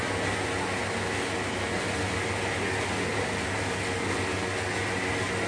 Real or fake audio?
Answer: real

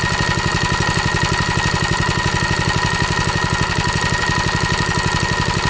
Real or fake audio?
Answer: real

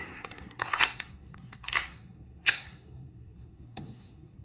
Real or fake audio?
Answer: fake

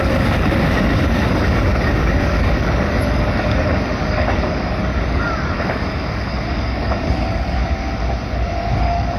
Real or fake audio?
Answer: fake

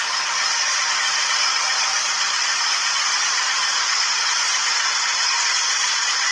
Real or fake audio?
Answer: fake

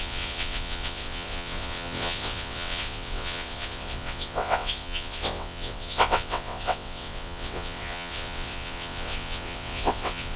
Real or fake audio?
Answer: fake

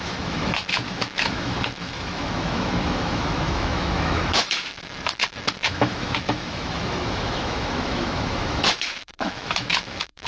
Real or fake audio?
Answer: fake